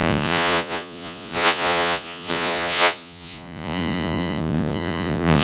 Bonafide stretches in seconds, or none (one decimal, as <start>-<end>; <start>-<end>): none